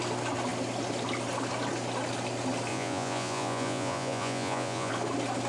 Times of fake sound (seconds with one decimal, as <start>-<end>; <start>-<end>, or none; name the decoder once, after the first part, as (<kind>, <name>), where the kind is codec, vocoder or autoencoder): 2.7-4.9 (vocoder, Vocos)